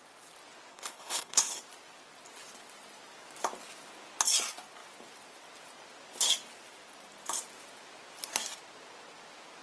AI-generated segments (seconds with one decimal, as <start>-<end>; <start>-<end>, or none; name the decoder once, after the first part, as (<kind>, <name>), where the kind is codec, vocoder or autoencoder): 0.7-1.6 (codec, HILCodec)

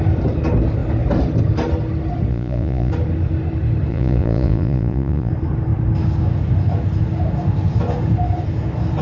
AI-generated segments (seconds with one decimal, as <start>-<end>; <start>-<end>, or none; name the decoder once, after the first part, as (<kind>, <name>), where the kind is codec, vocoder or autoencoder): 2.3-2.9 (vocoder, Vocos); 3.9-5.3

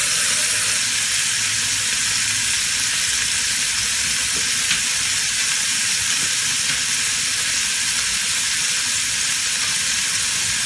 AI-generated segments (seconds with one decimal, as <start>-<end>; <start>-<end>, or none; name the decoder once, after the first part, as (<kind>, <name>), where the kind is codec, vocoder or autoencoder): 5.4-8.7 (vocoder, BigVGAN v2)

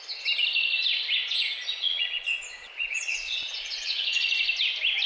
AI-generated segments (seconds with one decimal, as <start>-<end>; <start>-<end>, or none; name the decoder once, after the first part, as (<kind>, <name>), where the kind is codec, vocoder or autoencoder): 1.2-4.3 (vocoder, Vocos)

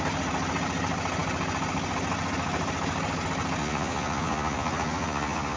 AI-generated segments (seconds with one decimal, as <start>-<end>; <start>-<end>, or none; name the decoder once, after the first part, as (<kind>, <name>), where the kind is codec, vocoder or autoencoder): 3.6-5.6 (vocoder, Vocos)